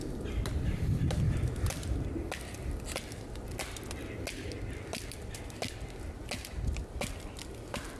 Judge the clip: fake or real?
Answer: real